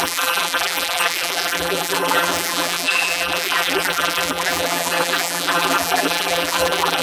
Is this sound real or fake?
fake